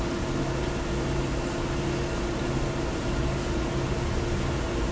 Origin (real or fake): real